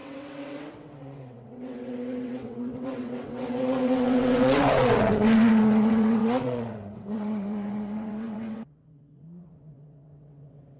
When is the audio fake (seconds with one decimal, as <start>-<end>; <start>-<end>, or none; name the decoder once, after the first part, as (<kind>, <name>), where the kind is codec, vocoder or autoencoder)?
0.0-10.8 (vocoder, WaveNeXt)